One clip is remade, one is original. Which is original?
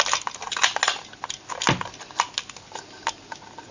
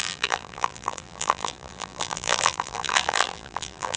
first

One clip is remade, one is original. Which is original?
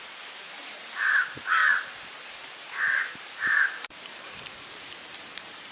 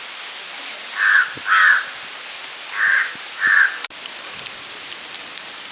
second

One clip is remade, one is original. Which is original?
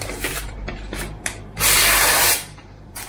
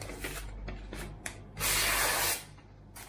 second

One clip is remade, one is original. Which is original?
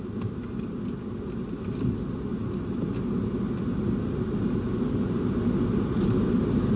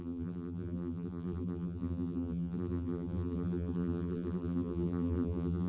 first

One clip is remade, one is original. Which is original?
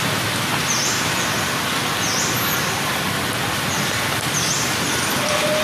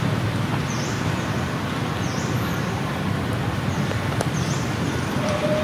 first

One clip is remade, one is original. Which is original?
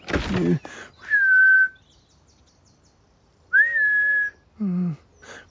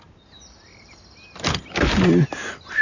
first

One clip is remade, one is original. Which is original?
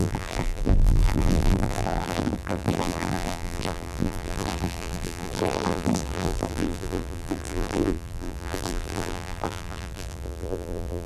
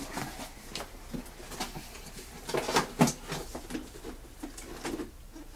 second